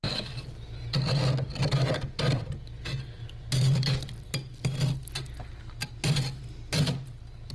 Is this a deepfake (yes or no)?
no